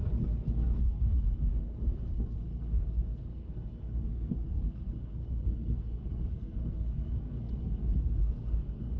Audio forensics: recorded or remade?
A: remade